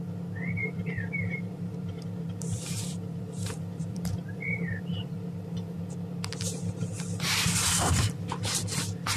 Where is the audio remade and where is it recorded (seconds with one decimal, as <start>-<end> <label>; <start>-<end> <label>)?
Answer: 0.0-0.6 recorded; 0.6-5.8 remade; 5.8-9.2 recorded